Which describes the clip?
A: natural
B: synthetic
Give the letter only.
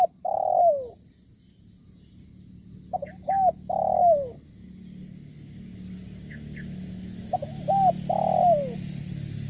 A